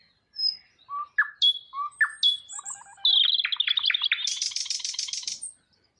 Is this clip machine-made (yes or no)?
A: no